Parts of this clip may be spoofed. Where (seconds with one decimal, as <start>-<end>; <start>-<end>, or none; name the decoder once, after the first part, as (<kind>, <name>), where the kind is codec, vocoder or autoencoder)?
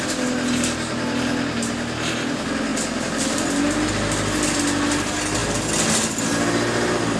none